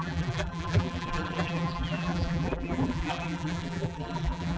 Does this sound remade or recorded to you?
remade